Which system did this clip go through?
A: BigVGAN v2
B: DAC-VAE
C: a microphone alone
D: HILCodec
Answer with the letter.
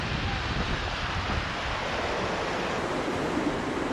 C